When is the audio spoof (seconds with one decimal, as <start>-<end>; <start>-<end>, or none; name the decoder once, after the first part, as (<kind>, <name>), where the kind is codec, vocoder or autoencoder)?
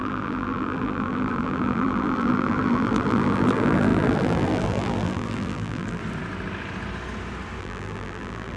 0.0-6.0 (vocoder, BigVGAN v2); 7.6-8.6